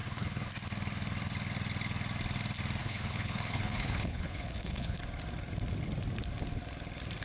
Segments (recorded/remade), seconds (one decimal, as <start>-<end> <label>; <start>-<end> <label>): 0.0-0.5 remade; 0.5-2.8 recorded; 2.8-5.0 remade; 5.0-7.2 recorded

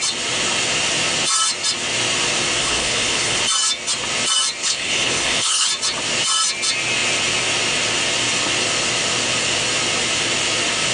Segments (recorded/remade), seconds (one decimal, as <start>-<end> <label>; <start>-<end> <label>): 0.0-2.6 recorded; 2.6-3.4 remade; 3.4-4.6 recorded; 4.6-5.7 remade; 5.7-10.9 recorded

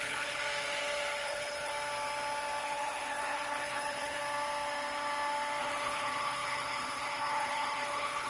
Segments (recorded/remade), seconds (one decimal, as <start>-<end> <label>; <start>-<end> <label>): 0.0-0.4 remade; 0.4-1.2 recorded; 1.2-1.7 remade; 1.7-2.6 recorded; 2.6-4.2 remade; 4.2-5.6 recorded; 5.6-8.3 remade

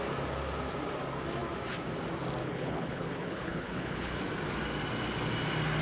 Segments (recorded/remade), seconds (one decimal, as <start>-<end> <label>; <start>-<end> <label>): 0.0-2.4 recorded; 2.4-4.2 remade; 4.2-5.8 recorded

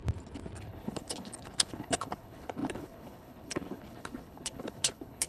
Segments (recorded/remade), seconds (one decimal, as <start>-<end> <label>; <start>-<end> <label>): 0.0-0.6 recorded; 0.6-5.3 remade

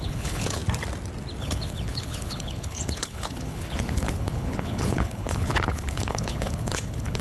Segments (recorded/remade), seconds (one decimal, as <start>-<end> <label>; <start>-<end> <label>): 0.0-0.6 remade; 0.6-1.4 recorded; 1.4-7.2 remade